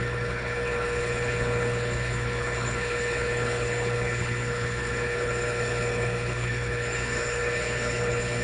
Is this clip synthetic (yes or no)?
yes